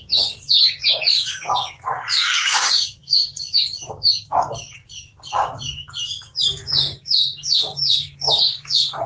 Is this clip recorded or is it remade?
remade